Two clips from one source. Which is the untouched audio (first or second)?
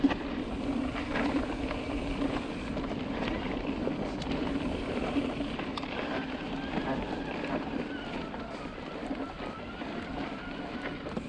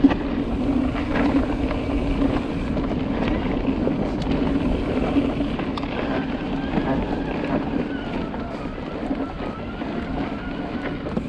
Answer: second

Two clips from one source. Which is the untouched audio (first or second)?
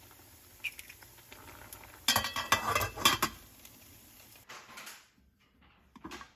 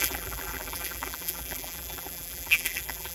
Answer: first